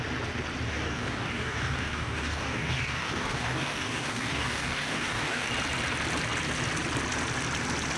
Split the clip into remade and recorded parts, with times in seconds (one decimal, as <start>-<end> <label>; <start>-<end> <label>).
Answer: 0.0-0.7 recorded; 0.7-5.5 remade; 5.5-8.0 recorded